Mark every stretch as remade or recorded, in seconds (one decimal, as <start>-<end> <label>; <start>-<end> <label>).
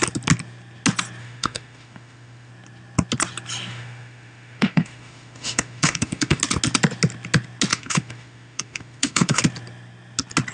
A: 0.0-1.2 recorded; 1.2-2.5 remade; 2.5-3.7 recorded; 3.7-6.4 remade; 6.4-7.7 recorded; 7.7-9.4 remade; 9.4-10.5 recorded